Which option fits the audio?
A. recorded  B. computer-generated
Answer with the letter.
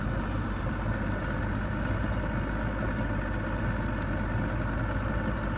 A